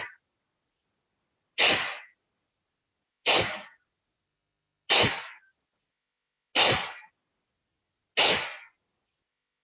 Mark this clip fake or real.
real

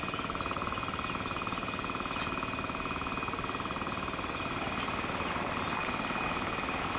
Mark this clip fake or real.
real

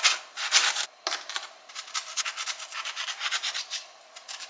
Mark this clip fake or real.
real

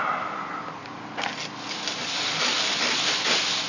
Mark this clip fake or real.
real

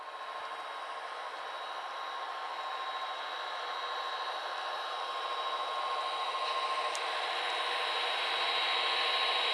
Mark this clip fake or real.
real